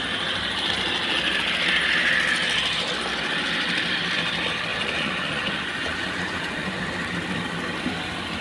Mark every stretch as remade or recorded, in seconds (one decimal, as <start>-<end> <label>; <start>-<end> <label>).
0.0-4.7 recorded; 4.7-6.8 remade; 6.8-8.4 recorded